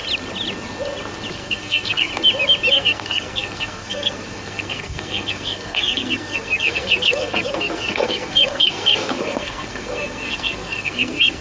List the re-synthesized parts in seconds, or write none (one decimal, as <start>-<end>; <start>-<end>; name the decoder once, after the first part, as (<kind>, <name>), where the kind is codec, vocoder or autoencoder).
1.3-2.1 (codec, SNAC); 2.7-11.4